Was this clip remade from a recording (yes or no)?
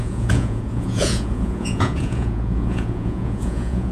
yes